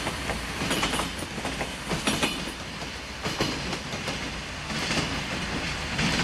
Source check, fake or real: real